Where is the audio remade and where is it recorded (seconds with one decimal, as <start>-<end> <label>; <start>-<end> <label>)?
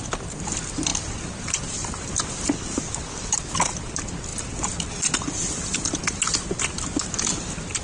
0.0-7.8 recorded